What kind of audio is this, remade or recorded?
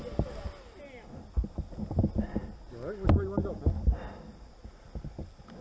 recorded